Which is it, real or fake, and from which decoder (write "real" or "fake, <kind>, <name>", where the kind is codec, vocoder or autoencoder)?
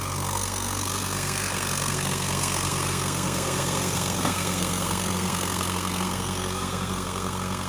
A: fake, codec, SNAC